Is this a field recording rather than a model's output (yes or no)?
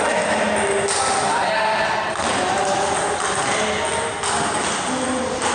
yes